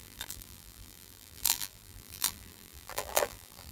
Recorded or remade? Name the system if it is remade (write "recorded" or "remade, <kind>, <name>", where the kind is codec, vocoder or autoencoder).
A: remade, vocoder, BigVGAN v2